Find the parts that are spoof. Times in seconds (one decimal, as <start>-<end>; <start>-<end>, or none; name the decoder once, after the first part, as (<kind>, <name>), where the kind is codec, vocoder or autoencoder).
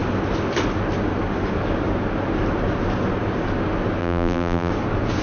4.0-4.7 (vocoder, BigVGAN v2)